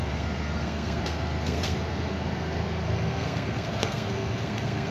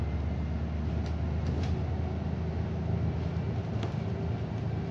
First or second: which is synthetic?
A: first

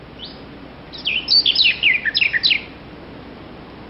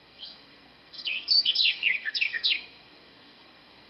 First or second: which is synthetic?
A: second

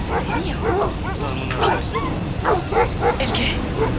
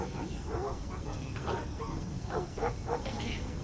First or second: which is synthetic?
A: second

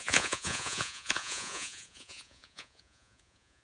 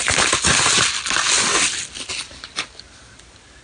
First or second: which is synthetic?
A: first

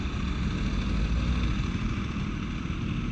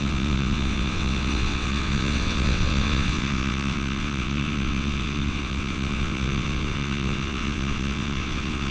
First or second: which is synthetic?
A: second